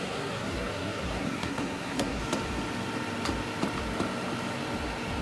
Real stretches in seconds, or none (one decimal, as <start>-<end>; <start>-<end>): 2.2-5.2